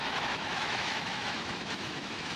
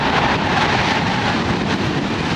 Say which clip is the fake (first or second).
first